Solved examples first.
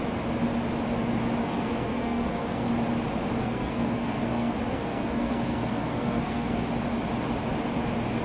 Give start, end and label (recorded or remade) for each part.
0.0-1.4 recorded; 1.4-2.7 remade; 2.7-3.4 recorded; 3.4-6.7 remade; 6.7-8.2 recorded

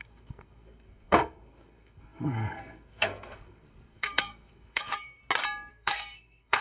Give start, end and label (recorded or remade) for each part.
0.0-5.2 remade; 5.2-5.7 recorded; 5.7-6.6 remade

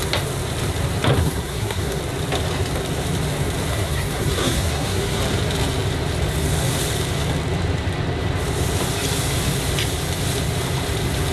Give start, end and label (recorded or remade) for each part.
0.0-1.2 recorded; 1.2-2.0 remade; 2.0-3.7 recorded; 3.7-5.2 remade; 5.2-11.3 recorded